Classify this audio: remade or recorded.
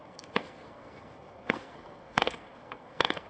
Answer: remade